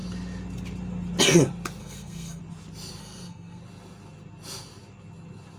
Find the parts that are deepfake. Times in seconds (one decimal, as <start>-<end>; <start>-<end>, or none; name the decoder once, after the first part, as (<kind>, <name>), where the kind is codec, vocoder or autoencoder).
1.8-2.4 (codec, SNAC); 3.0-3.6